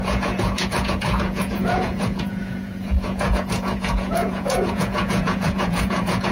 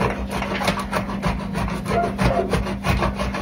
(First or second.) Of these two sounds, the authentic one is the second